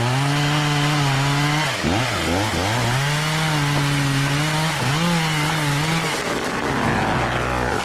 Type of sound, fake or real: real